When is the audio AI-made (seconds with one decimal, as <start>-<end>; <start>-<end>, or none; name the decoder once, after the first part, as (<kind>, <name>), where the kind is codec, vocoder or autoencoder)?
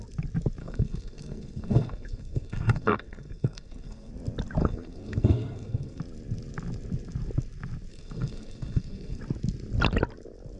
0.6-4.1 (codec, SNAC); 4.6-6.0; 7.9-9.2